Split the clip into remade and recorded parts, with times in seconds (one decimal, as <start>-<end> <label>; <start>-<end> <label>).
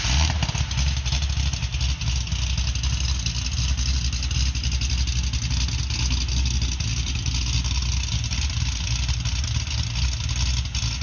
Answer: 0.0-11.0 recorded